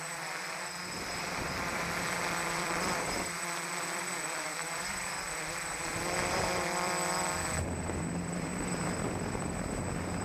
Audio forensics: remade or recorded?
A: remade